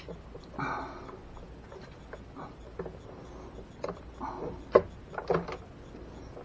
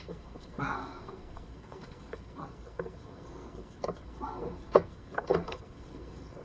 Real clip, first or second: first